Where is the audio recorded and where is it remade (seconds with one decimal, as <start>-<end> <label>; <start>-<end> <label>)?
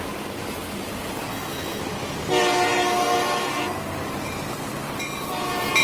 0.0-1.3 recorded; 1.3-1.8 remade; 1.8-5.8 recorded